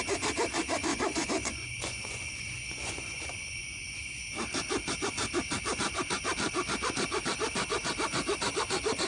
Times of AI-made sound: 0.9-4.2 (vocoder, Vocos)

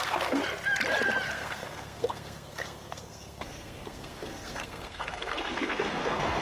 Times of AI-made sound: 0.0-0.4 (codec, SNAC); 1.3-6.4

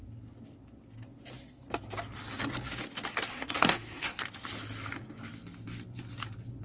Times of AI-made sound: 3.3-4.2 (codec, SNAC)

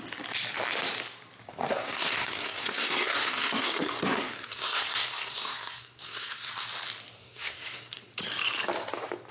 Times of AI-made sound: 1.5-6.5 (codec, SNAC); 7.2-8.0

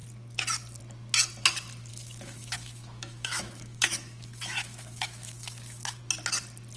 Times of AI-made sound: 1.9-6.0 (autoencoder, DAC-VAE)

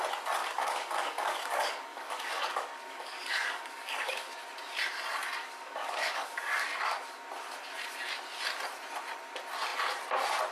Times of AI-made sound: 0.4-4.4 (codec, DAC); 5.4-7.2